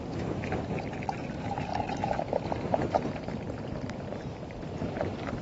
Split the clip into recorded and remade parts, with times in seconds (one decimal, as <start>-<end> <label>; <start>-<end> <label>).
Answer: 0.0-1.7 remade; 1.7-3.5 recorded; 3.5-5.4 remade